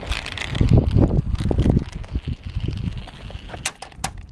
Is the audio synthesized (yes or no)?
no